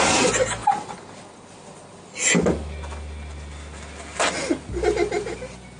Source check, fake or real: real